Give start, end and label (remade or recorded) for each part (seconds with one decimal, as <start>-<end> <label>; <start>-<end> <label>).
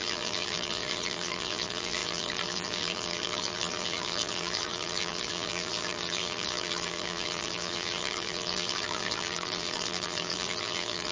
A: 0.0-11.1 remade